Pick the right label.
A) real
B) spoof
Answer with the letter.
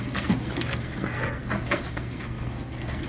B